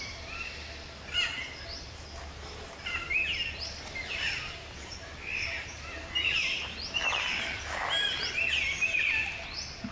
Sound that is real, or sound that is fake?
real